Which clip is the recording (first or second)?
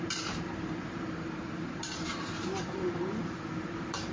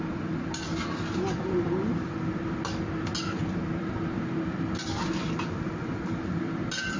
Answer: second